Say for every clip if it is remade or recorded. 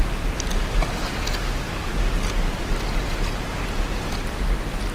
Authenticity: recorded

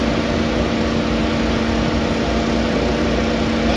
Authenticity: recorded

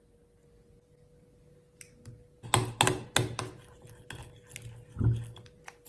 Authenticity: recorded